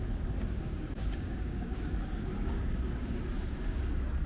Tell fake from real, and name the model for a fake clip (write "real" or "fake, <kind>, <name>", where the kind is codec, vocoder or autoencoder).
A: fake, codec, DAC